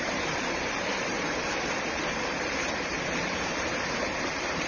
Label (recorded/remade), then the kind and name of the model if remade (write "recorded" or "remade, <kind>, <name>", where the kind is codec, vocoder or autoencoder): remade, vocoder, BigVGAN v2